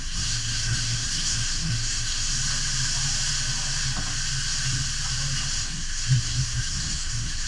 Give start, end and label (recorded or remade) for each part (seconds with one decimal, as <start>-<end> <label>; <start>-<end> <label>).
0.0-2.3 remade; 2.3-5.6 recorded; 5.6-7.5 remade